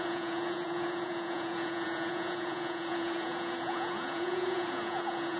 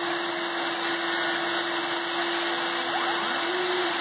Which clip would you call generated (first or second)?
first